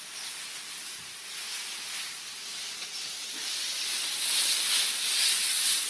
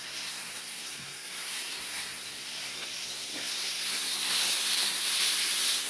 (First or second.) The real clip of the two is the first